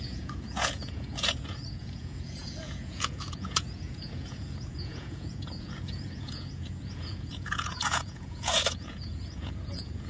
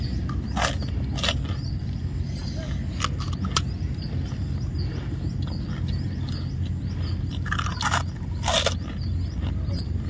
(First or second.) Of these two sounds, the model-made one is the first